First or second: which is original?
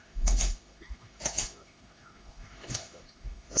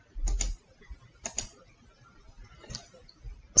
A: second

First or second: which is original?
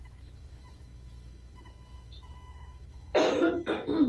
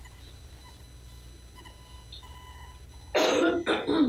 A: second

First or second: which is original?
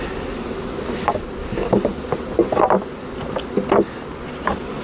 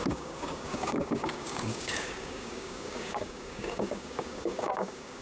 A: first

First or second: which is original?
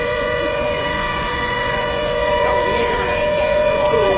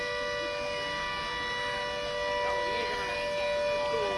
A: second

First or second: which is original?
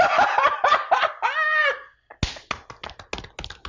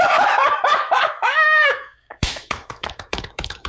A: first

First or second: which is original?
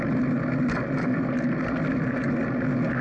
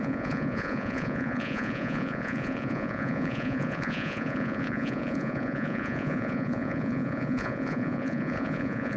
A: first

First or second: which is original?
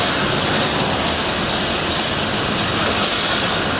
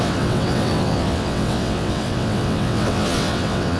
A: first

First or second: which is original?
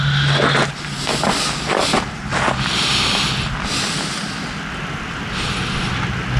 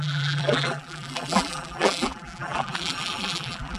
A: first